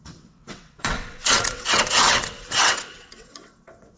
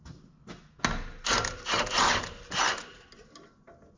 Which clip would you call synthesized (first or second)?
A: first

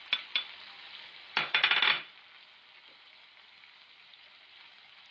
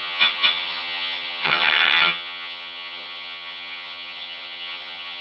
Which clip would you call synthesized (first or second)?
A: second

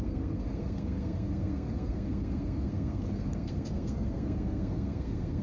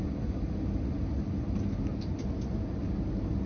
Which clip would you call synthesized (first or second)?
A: first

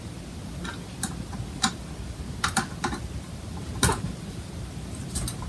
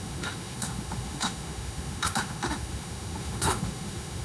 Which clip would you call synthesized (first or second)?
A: second